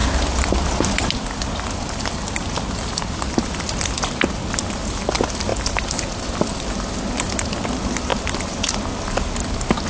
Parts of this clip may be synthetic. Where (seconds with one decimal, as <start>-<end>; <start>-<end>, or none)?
none